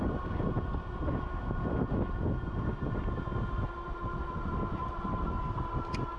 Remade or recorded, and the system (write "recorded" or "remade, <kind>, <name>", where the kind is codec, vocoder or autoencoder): recorded